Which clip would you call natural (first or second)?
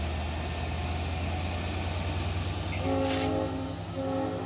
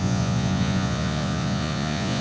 first